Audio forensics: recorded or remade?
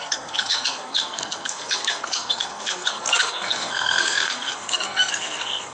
remade